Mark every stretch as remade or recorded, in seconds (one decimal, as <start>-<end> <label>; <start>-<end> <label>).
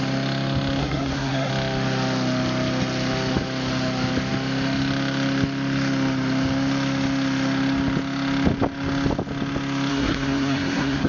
0.0-0.8 recorded; 0.8-1.5 remade; 1.5-9.9 recorded; 9.9-11.1 remade